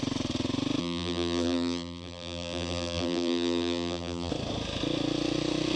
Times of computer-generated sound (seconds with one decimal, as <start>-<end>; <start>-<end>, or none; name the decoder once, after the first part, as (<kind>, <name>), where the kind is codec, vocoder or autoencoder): 0.8-4.3 (vocoder, BigVGAN v2)